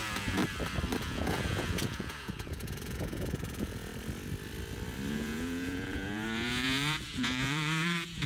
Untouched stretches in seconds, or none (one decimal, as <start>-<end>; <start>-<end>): 0.4-1.0; 3.9-5.1